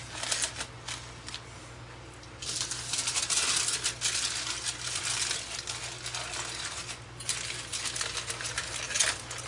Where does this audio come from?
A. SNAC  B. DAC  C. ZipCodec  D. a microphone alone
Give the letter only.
D